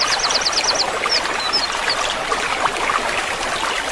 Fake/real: real